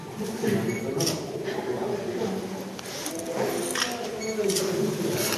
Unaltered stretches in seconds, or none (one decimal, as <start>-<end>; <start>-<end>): 0.0-5.4